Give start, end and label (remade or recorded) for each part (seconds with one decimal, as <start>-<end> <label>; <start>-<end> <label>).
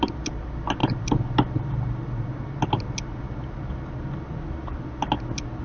0.0-5.6 recorded